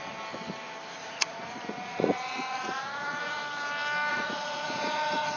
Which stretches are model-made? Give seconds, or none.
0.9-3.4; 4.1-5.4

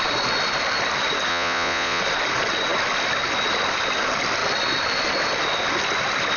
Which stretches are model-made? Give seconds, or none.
1.3-2.0

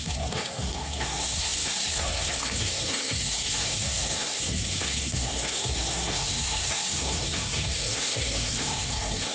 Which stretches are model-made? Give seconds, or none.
0.0-9.3

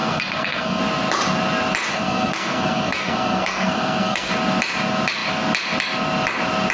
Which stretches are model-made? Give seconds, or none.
0.0-0.8; 1.9-4.3

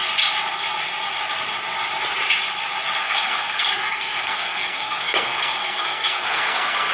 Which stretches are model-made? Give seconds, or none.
3.0-6.9